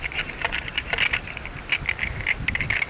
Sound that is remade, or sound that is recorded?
recorded